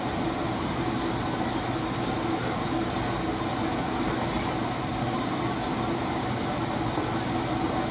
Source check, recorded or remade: recorded